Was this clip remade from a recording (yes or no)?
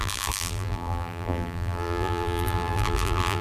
yes